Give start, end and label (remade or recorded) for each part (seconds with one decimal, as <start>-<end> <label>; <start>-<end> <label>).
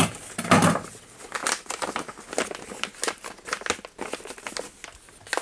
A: 0.0-5.4 recorded